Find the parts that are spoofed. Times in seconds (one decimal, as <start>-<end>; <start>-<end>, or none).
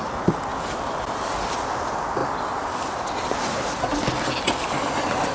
none